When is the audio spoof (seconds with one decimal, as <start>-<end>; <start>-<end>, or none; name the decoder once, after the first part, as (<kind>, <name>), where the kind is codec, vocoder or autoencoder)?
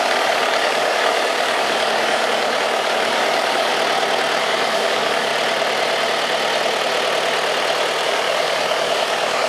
0.0-3.7 (codec, DAC); 4.4-5.3; 8.0-9.5